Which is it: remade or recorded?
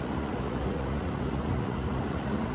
remade